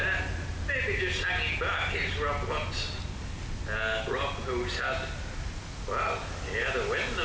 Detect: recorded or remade recorded